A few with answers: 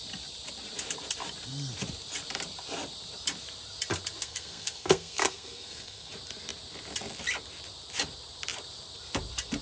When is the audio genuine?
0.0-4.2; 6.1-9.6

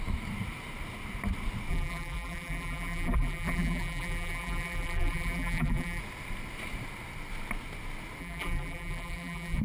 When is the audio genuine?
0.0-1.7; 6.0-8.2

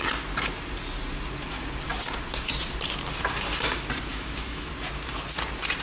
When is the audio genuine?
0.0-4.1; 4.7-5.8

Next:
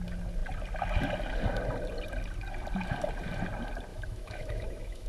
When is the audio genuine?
0.0-3.9

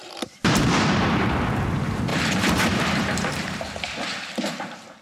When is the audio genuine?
1.4-2.1

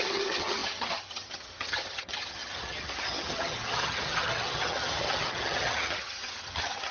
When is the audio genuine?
none